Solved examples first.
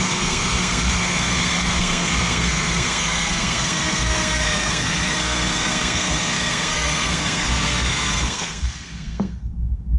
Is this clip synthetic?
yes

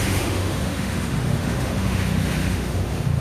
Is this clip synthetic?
yes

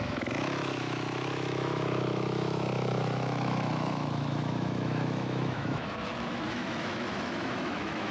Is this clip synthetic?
yes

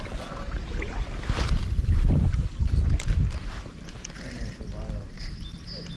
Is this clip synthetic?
no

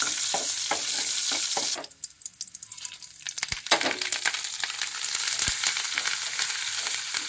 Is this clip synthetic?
no